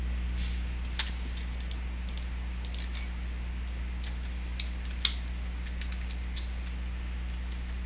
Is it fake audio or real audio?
real